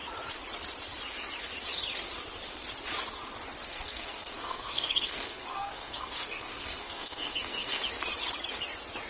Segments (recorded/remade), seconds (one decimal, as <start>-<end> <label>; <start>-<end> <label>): 0.0-3.7 recorded; 3.7-7.8 remade; 7.8-9.1 recorded